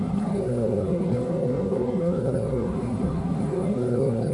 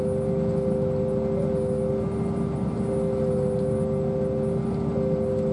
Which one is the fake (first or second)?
first